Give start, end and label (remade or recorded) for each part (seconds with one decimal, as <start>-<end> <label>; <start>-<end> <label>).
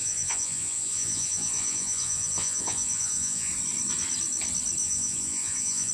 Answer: 0.0-3.5 remade; 3.5-4.8 recorded; 4.8-5.9 remade